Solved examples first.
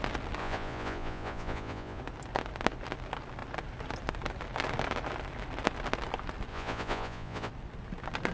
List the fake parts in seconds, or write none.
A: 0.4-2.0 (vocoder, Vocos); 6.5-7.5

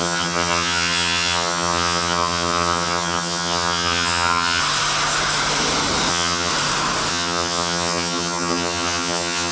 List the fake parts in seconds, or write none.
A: 0.0-4.6 (vocoder, HiFi-GAN); 6.1-6.5; 7.1-9.5

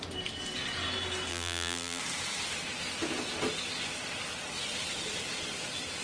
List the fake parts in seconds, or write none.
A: 1.3-2.0 (vocoder, BigVGAN v2)

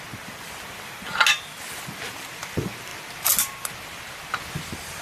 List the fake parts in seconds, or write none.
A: none

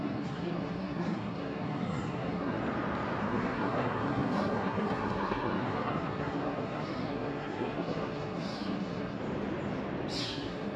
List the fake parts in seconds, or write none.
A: 0.0-2.6 (codec, SNAC); 3.2-9.2; 10.2-10.8

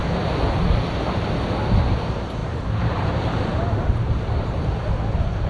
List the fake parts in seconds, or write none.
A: 2.4-5.5 (vocoder, BigVGAN v2)

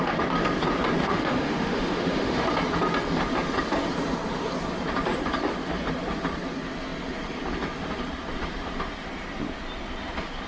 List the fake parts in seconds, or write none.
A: 1.0-2.5 (autoencoder, DAC-VAE)

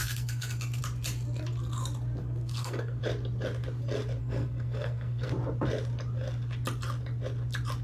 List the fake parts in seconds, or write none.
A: 0.0-0.8 (codec, SNAC); 2.2-3.0; 4.2-5.3